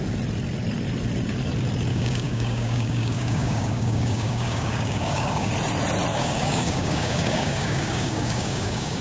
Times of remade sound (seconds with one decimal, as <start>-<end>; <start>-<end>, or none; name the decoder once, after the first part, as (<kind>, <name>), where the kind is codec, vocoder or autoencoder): 1.9-5.5 (codec, DAC); 6.1-9.0